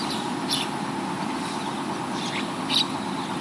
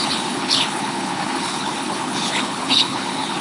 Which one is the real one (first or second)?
first